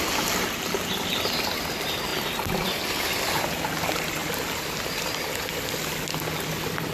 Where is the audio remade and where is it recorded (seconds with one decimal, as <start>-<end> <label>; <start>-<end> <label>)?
0.0-2.1 remade; 2.1-3.1 recorded; 3.1-4.2 remade; 4.2-5.3 recorded; 5.3-6.9 remade